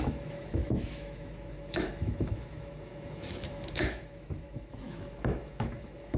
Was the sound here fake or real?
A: fake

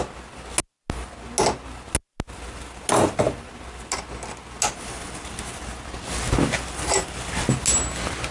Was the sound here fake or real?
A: real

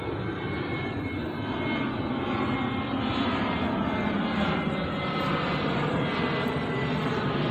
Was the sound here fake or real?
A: real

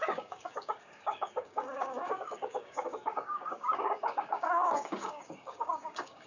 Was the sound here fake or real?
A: fake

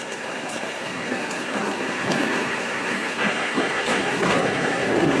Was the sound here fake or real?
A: fake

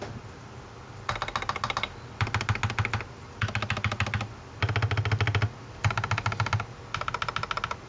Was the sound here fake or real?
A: real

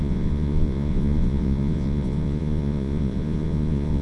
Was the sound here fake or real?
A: fake